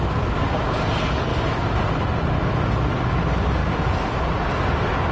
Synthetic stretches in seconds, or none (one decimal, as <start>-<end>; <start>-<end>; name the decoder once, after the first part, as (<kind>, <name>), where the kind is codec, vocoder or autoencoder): 1.3-1.8 (vocoder, BigVGAN v2); 3.6-4.4